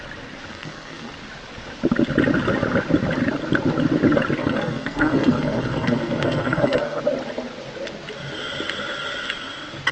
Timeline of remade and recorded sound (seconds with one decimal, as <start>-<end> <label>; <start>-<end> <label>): 0.0-0.5 recorded; 0.5-1.1 remade; 1.1-4.4 recorded; 4.4-7.0 remade; 7.0-9.9 recorded